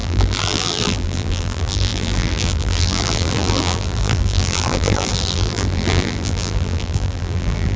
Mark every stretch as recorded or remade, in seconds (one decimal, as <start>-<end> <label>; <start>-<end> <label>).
0.0-7.8 remade